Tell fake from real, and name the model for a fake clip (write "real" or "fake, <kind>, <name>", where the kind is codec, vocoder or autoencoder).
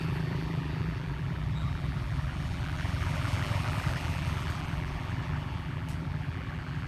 fake, vocoder, BigVGAN v2